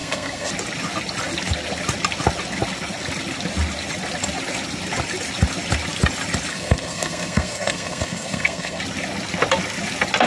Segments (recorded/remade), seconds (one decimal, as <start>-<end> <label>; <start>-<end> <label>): 0.0-0.5 remade; 0.5-6.5 recorded; 6.5-8.8 remade; 8.8-10.3 recorded